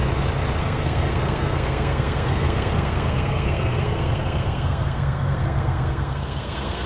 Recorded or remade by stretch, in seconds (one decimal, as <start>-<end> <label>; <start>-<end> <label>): 0.0-0.6 recorded; 0.6-6.9 remade